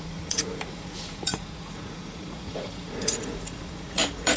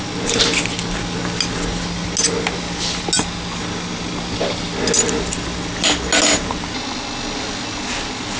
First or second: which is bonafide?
second